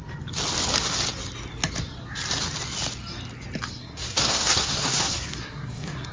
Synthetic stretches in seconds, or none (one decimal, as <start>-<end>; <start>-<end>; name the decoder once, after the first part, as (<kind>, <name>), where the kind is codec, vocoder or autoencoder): 3.7-6.1 (codec, SNAC)